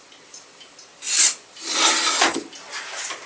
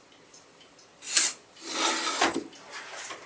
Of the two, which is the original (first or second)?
first